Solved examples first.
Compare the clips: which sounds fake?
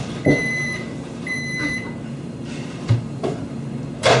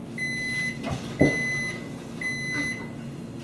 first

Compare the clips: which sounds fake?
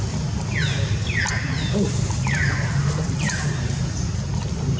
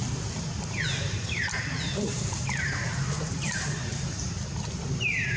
second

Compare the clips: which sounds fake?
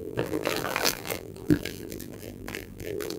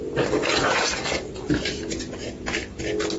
first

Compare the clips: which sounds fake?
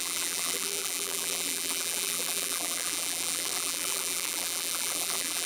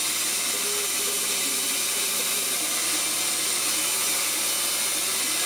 first